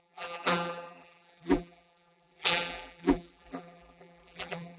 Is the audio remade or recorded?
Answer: remade